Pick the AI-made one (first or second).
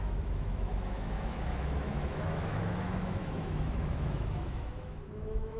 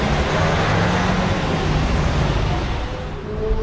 first